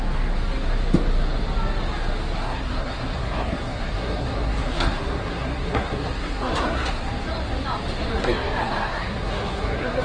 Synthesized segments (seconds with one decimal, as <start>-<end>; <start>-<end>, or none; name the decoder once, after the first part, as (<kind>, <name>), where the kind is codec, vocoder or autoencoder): 2.4-7.1 (codec, SNAC); 8.2-10.0